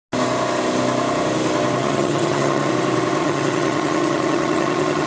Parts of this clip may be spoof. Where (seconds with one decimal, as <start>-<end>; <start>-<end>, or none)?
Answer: 1.8-2.7; 3.2-5.1